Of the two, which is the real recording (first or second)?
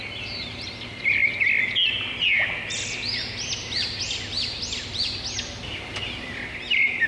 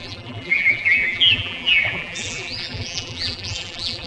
first